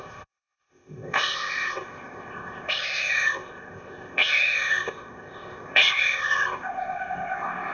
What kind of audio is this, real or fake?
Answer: fake